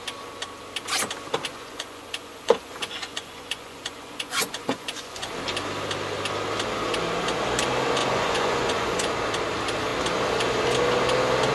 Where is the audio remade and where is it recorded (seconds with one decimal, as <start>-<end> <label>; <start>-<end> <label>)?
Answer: 0.0-1.5 recorded; 1.5-5.3 remade; 5.3-8.0 recorded; 8.0-9.1 remade; 9.1-11.5 recorded